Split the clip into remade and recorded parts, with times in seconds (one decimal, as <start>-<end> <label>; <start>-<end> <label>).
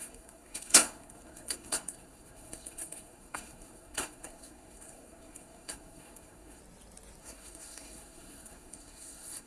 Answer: 0.0-6.6 remade; 6.6-7.2 recorded; 7.2-9.5 remade